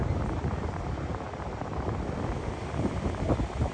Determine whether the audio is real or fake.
real